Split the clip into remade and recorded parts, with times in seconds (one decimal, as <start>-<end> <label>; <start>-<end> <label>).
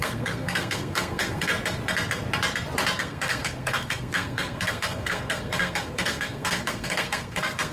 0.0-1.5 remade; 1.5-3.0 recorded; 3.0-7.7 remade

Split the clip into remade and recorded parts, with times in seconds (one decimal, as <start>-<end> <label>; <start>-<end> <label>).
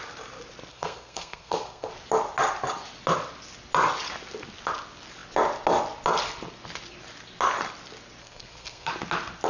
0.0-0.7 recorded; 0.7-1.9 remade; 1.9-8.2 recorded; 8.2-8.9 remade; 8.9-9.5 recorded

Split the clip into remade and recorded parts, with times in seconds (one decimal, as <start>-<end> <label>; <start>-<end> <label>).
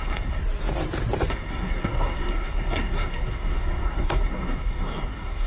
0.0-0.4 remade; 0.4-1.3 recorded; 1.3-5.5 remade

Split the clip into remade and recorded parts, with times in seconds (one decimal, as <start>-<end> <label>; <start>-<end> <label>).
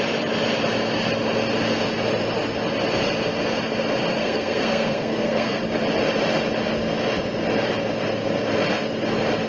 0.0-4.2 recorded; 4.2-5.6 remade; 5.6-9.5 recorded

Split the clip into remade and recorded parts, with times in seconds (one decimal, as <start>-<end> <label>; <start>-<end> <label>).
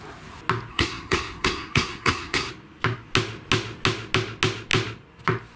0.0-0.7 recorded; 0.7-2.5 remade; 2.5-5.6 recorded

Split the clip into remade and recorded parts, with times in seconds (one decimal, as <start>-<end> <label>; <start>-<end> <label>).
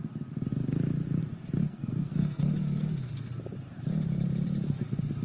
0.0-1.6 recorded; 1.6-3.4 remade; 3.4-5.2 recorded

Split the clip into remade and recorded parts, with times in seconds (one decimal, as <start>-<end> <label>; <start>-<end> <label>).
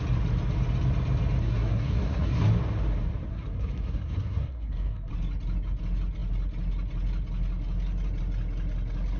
0.0-1.4 recorded; 1.4-2.5 remade; 2.5-3.3 recorded; 3.3-5.1 remade; 5.1-9.2 recorded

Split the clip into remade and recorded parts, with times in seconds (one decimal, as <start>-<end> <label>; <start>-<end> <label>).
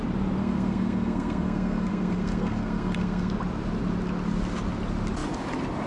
0.0-0.4 recorded; 0.4-3.3 remade; 3.3-5.9 recorded